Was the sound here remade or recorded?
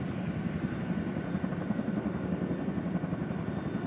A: recorded